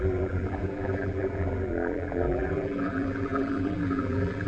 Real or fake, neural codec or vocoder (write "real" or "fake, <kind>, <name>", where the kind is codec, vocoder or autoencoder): fake, vocoder, BigVGAN v2